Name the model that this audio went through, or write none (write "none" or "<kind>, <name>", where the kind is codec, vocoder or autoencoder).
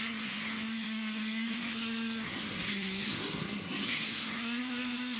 codec, SNAC